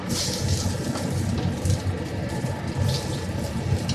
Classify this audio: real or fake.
real